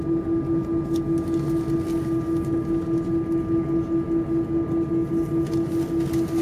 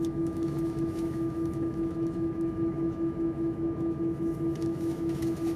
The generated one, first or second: second